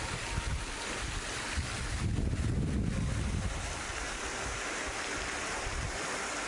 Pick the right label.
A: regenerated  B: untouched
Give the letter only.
B